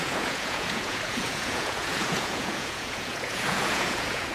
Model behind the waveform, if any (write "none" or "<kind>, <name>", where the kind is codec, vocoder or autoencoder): vocoder, Vocos